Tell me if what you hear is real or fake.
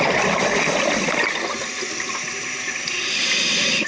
real